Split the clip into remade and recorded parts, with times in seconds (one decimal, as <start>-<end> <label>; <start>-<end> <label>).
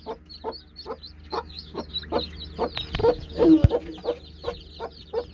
0.0-1.2 recorded; 1.2-1.9 remade; 1.9-3.0 recorded; 3.0-3.7 remade; 3.7-5.3 recorded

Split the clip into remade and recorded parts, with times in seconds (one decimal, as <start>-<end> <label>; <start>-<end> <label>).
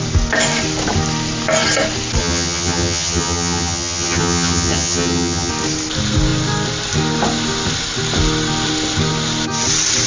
0.0-2.2 recorded; 2.2-5.5 remade; 5.5-10.1 recorded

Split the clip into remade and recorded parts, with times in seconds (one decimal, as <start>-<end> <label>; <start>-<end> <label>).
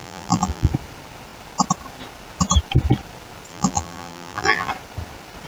0.0-0.7 remade; 0.7-3.5 recorded; 3.5-4.7 remade; 4.7-5.5 recorded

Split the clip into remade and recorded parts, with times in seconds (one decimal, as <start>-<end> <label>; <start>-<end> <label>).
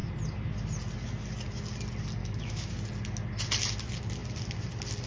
0.0-2.2 recorded; 2.2-2.7 remade; 2.7-5.1 recorded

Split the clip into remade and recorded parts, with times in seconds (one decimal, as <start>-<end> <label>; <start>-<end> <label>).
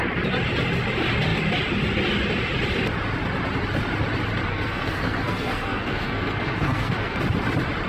0.0-4.5 recorded; 4.5-7.2 remade; 7.2-7.9 recorded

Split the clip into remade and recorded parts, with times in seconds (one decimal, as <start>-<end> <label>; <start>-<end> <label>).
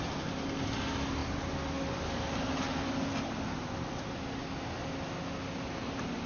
0.0-6.3 recorded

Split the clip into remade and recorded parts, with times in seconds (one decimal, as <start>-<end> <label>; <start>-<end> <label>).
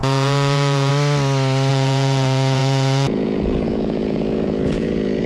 0.0-0.9 remade; 0.9-1.7 recorded; 1.7-5.3 remade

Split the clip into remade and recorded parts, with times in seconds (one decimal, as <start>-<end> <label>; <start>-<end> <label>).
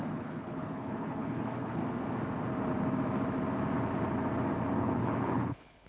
0.0-1.8 remade; 1.8-4.8 recorded; 4.8-5.9 remade